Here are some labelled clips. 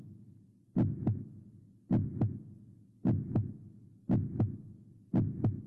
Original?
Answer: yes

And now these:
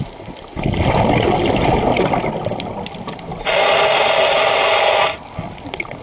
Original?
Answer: yes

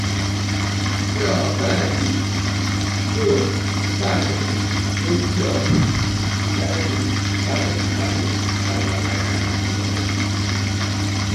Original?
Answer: yes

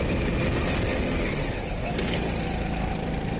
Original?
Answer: yes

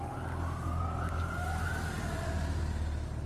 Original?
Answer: yes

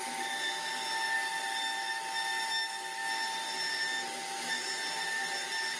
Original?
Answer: yes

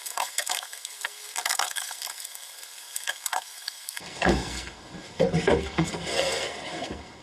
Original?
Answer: no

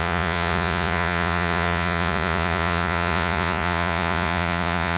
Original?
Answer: no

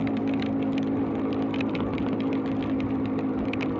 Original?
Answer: yes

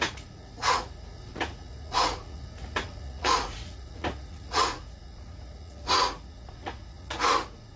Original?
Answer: no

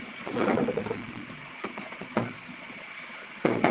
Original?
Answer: no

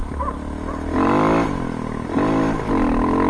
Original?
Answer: yes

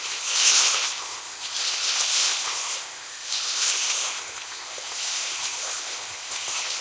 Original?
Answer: no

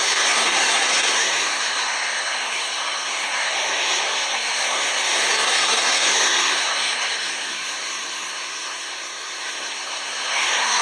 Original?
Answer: no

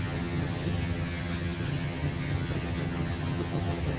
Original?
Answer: no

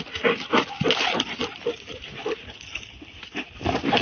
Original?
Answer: yes